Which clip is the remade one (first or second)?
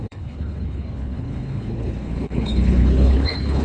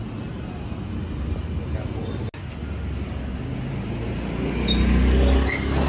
first